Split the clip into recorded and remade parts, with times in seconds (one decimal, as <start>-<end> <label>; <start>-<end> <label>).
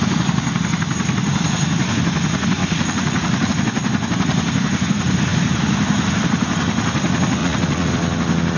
0.0-2.6 recorded; 2.6-3.5 remade; 3.5-7.4 recorded; 7.4-7.9 remade; 7.9-8.6 recorded